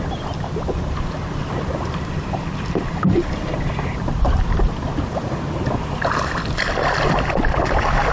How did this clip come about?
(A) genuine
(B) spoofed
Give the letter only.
B